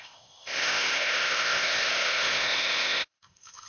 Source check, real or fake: fake